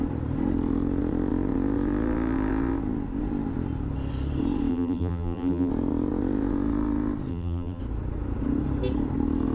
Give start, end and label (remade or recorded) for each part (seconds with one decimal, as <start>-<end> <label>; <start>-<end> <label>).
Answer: 0.0-4.7 recorded; 4.7-5.7 remade; 5.7-7.3 recorded; 7.3-7.8 remade; 7.8-9.5 recorded